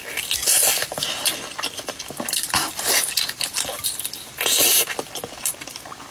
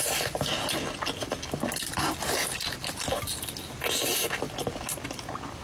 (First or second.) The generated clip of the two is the first